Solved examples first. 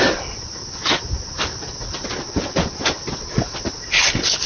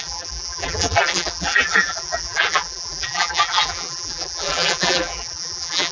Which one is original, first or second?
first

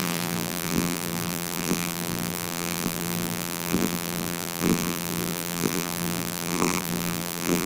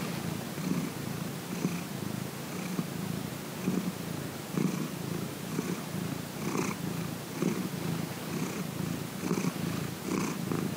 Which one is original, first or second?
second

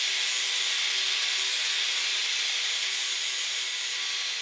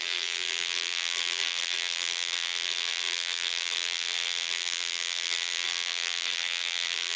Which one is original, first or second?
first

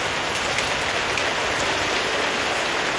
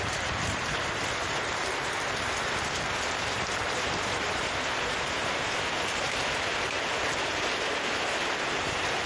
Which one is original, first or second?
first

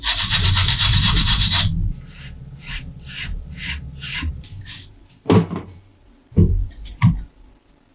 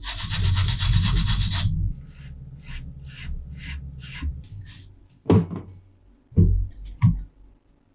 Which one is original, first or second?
second